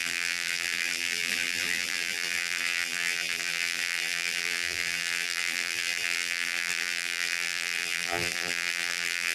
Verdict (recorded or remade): remade